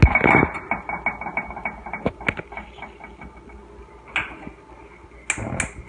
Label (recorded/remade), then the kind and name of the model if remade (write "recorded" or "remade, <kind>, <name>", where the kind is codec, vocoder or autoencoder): recorded